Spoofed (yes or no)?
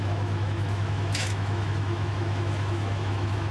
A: yes